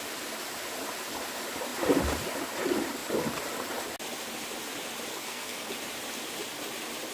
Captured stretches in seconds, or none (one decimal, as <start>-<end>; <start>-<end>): 0.0-5.1; 5.7-7.1